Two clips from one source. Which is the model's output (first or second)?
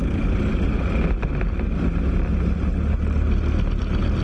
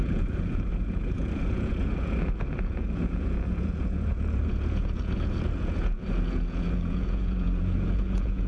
second